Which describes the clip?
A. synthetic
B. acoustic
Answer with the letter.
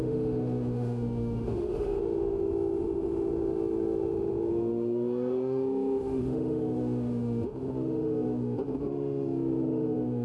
A